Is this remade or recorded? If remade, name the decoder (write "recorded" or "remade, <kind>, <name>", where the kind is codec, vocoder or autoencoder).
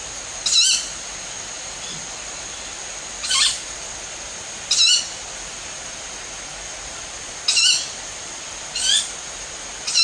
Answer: recorded